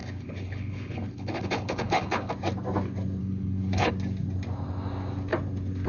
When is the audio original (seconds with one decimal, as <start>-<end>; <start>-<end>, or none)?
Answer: 2.3-3.2; 3.9-5.9